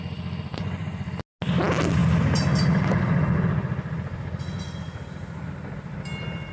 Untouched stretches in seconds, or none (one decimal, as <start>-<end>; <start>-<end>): 0.0-0.5; 1.1-6.5